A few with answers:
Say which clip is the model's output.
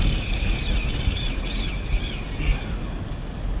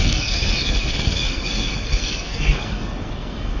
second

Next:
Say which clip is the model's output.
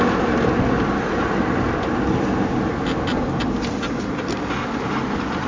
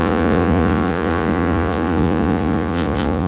second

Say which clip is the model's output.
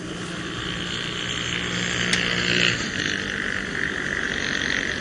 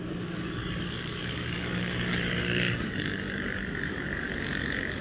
second